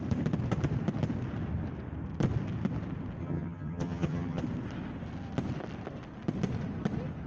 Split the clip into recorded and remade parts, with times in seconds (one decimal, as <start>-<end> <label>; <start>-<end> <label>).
0.0-3.2 recorded; 3.2-4.4 remade; 4.4-7.3 recorded